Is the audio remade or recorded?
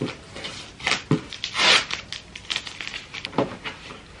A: recorded